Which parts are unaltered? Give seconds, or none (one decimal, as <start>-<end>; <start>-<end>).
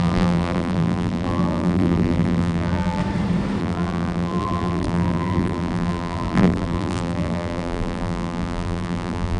3.0-3.6